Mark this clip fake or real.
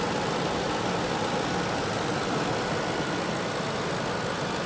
real